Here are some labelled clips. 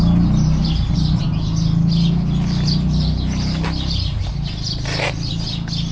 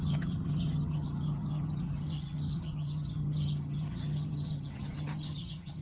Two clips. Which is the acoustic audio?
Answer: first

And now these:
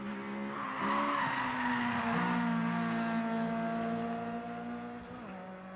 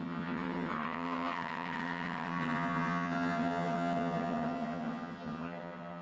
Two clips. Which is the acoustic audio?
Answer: first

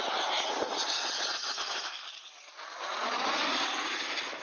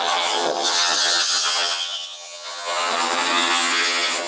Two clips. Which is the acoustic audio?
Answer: first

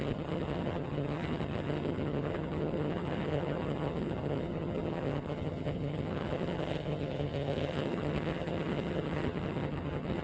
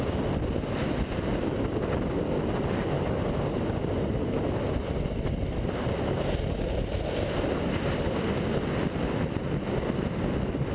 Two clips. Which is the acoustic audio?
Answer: second